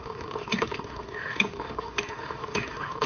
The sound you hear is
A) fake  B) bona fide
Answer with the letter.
A